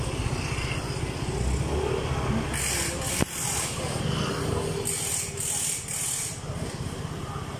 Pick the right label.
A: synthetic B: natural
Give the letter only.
B